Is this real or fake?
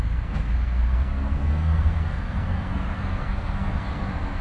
fake